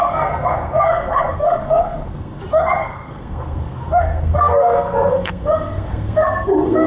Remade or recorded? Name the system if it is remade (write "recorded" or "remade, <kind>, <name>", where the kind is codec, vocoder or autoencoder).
remade, codec, SNAC